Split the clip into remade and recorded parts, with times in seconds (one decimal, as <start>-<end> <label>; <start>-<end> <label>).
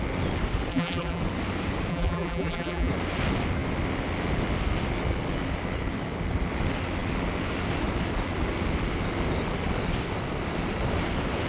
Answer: 0.0-0.7 recorded; 0.7-1.2 remade; 1.2-1.9 recorded; 1.9-2.9 remade; 2.9-11.5 recorded